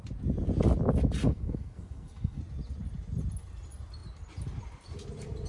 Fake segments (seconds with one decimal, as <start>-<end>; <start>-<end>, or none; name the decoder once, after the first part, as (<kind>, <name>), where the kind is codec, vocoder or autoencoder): 1.2-2.4 (codec, SNAC)